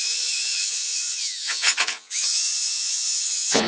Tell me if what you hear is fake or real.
fake